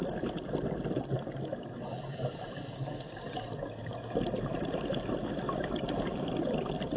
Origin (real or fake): real